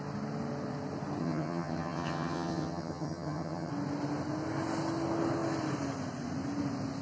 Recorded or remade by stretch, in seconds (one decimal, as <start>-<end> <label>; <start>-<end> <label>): 0.0-1.2 recorded; 1.2-3.7 remade; 3.7-7.0 recorded